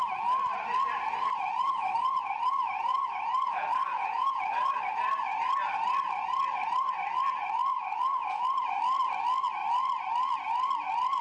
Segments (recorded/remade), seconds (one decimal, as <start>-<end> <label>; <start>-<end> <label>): 0.0-3.8 recorded; 3.8-4.4 remade; 4.4-11.2 recorded